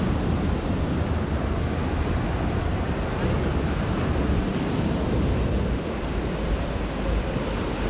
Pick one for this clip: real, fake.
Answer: real